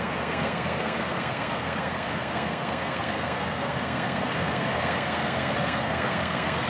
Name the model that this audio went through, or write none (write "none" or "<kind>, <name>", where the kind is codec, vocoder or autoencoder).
codec, SNAC